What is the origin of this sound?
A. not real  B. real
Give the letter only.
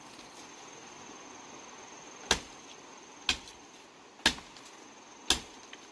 B